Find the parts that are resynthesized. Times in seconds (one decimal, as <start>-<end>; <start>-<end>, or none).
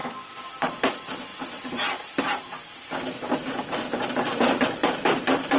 1.3-2.2; 4.8-5.6